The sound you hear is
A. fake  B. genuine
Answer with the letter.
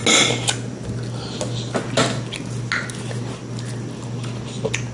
B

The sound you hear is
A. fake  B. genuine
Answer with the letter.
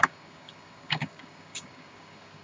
A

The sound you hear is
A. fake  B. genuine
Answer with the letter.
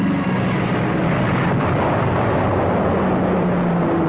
B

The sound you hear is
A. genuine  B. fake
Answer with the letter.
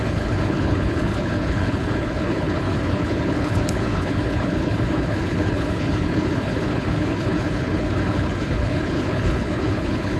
B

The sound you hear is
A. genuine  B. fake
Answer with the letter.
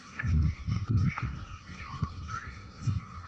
B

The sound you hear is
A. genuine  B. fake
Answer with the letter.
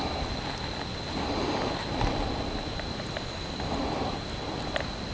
A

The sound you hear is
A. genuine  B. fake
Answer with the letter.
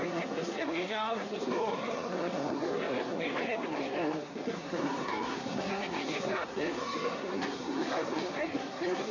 B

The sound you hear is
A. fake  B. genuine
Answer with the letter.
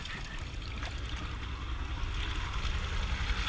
B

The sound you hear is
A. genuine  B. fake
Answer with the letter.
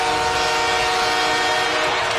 A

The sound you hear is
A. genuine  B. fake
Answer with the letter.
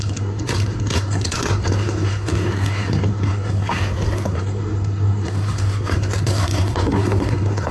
B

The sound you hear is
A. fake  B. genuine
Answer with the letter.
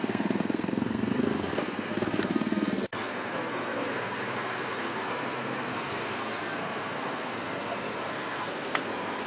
A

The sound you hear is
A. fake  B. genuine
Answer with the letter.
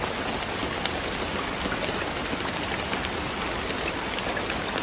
B